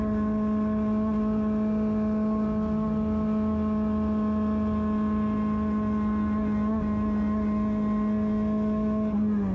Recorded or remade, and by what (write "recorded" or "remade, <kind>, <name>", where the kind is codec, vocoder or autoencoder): recorded